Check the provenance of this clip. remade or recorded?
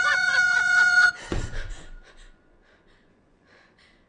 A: remade